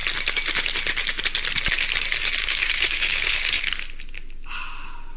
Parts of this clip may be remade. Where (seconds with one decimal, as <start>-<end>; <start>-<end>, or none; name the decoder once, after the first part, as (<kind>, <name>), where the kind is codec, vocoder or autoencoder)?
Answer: 2.4-3.6 (codec, DAC)